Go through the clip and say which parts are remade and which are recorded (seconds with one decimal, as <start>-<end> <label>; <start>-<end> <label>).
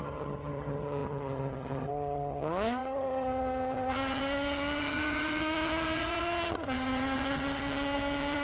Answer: 0.0-8.4 remade